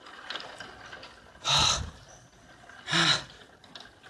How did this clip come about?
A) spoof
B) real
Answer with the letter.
B